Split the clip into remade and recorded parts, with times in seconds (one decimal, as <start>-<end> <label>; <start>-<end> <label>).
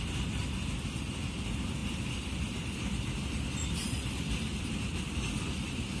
0.0-1.8 recorded; 1.8-5.2 remade; 5.2-6.0 recorded